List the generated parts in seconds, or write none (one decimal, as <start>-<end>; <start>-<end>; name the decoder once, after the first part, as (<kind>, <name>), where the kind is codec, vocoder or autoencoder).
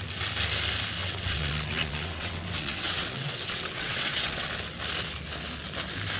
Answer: 1.0-4.5 (vocoder, WaveNeXt)